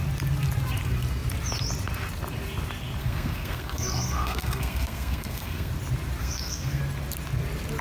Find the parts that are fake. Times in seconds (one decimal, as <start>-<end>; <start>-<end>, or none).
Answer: 3.0-5.7; 6.2-6.8